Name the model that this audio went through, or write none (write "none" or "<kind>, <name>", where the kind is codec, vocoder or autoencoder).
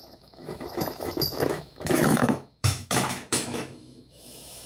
autoencoder, DAC-VAE